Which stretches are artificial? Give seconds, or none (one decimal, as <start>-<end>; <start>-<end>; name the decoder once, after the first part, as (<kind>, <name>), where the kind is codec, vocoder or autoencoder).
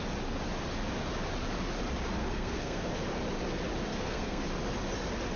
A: 2.2-2.9 (codec, SNAC); 3.9-4.4